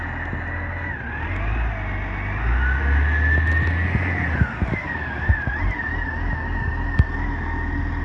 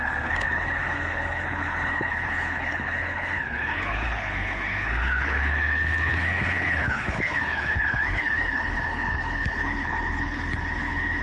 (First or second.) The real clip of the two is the first